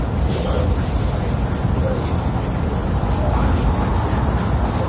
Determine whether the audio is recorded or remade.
recorded